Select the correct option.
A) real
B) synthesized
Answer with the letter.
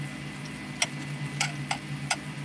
A